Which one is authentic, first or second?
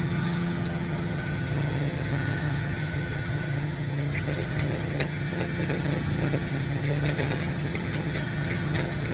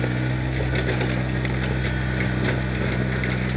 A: second